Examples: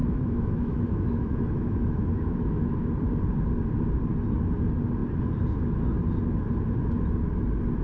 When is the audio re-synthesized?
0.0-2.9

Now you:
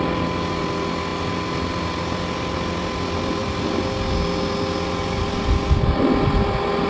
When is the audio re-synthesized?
none

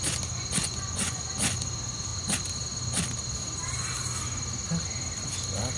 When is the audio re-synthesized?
0.6-1.3

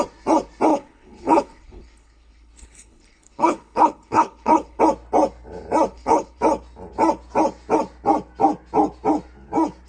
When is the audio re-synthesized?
0.7-4.8; 5.9-6.4

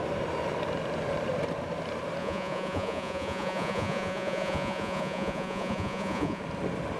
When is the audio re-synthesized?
2.2-6.4

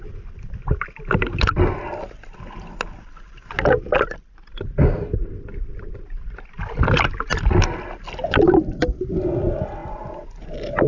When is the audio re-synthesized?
none

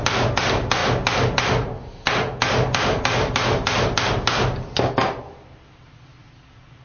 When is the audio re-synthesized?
none